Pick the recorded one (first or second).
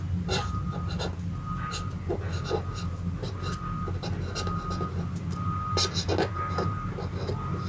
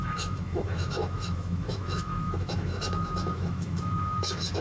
first